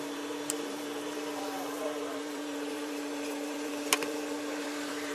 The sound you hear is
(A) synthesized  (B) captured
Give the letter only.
A